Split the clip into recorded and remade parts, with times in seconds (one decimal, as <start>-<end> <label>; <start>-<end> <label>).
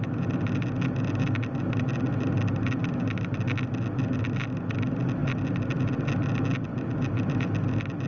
0.0-8.1 recorded